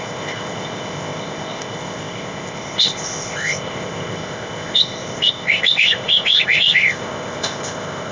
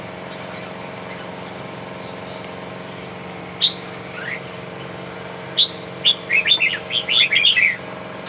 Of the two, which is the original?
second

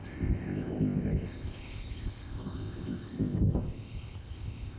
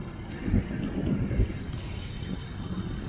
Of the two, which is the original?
second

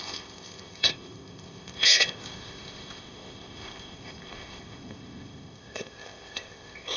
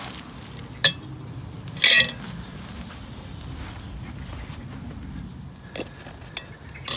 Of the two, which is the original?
second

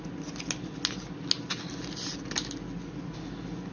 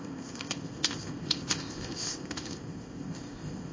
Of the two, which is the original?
first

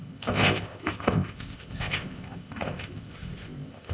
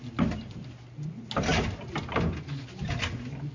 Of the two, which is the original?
second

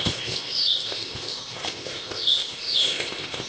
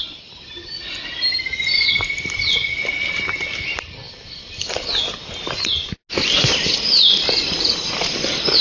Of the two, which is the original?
second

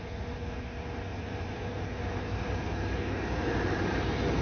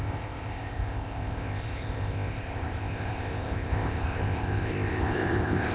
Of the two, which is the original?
first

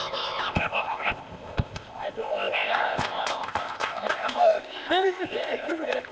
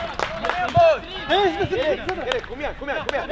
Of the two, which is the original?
second